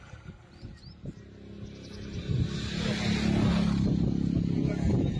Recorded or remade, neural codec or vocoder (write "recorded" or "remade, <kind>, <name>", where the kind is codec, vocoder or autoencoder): recorded